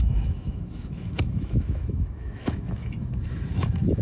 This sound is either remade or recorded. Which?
remade